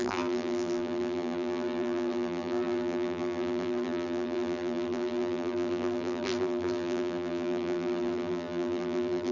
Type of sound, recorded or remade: remade